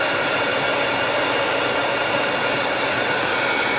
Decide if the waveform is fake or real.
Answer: real